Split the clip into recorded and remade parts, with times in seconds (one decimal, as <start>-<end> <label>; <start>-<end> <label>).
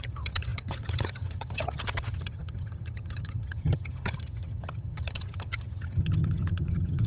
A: 0.0-7.1 remade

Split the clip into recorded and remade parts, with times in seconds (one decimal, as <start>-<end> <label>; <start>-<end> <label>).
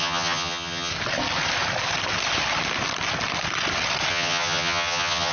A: 0.0-0.9 remade; 0.9-4.1 recorded; 4.1-5.3 remade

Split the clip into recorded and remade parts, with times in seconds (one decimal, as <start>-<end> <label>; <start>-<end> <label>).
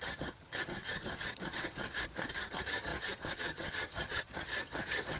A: 0.0-1.8 remade; 1.8-2.3 recorded; 2.3-5.2 remade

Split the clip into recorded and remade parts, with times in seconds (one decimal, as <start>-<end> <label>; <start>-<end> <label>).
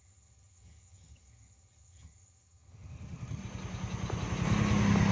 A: 0.0-3.4 remade; 3.4-5.1 recorded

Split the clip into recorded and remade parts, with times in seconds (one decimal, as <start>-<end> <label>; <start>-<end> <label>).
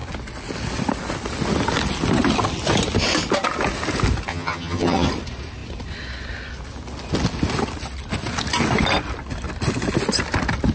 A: 0.0-4.3 recorded; 4.3-5.1 remade; 5.1-10.7 recorded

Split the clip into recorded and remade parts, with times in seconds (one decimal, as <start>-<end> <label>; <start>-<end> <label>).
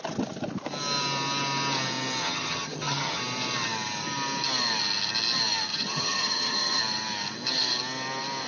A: 0.0-2.2 recorded; 2.2-3.2 remade; 3.2-5.7 recorded; 5.7-6.8 remade; 6.8-8.5 recorded